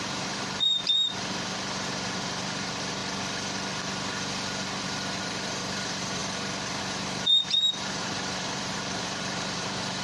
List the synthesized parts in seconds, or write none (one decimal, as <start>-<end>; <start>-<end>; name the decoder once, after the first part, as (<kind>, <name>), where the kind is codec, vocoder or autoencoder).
0.0-3.0 (vocoder, BigVGAN v2); 5.2-6.2; 6.8-10.0